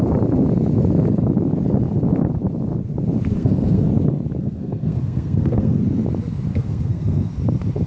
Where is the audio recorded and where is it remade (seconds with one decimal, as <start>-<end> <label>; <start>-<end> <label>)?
0.0-3.3 recorded; 3.3-3.9 remade; 3.9-4.4 recorded; 4.4-5.8 remade; 5.8-6.5 recorded; 6.5-7.3 remade; 7.3-7.9 recorded